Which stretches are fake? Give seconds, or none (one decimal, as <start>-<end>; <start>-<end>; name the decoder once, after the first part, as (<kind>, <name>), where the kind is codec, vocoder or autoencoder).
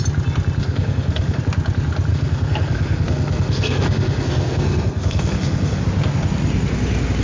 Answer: 0.6-1.4 (codec, SNAC); 2.1-5.8